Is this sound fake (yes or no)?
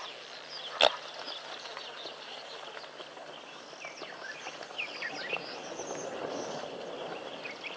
no